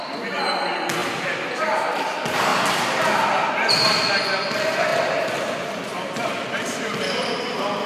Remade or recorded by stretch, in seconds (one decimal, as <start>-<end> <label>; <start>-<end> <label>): 0.0-4.9 recorded; 4.9-7.3 remade; 7.3-7.9 recorded

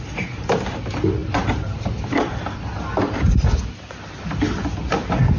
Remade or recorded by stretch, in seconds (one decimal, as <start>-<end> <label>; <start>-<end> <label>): 0.0-5.4 recorded

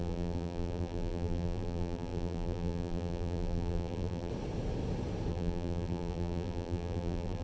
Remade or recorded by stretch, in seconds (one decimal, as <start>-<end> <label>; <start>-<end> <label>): 0.0-4.3 remade; 4.3-5.3 recorded; 5.3-7.4 remade

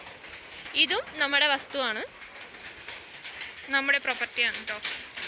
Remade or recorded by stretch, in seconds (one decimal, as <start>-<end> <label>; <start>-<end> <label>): 0.0-5.3 recorded

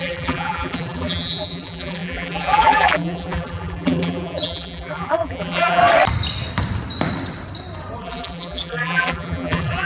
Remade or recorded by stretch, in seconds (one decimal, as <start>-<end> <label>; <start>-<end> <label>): 0.0-5.8 remade; 5.8-8.0 recorded; 8.0-9.9 remade

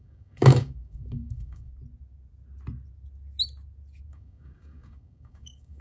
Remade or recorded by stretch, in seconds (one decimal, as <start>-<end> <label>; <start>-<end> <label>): 0.0-1.7 remade; 1.7-4.1 recorded; 4.1-5.8 remade

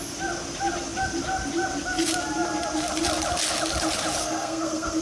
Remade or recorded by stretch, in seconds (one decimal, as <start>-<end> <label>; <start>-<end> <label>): 0.0-4.2 recorded; 4.2-5.0 remade